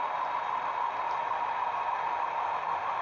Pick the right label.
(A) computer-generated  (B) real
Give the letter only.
B